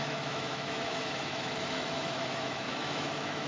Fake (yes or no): yes